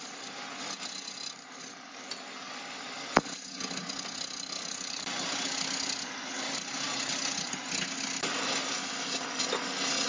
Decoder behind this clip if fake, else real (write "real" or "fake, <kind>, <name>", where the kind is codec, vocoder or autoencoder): real